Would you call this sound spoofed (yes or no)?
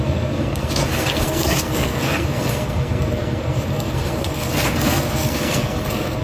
yes